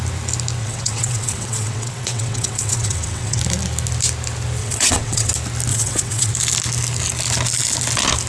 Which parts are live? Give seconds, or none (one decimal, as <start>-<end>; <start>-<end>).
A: 0.0-0.6; 3.4-4.6; 5.3-5.7; 6.3-8.3